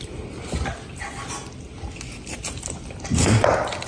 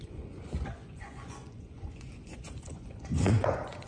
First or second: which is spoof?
second